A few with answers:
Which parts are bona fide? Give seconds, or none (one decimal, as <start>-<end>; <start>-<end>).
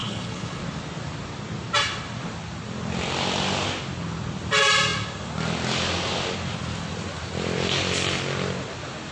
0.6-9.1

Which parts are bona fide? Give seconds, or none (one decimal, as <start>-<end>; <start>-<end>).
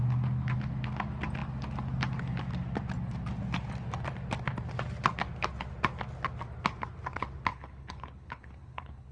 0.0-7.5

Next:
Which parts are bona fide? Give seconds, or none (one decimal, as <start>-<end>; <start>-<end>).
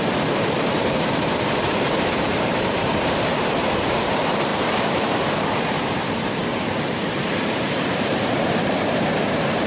none